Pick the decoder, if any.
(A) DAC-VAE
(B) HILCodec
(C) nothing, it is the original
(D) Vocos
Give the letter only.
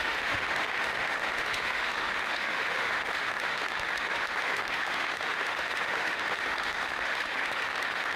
A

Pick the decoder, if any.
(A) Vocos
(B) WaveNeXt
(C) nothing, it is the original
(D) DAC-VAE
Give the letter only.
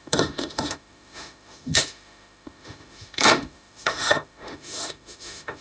D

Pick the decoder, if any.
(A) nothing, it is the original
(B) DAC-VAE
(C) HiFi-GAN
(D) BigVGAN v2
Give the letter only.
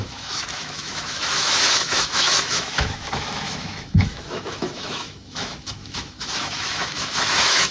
B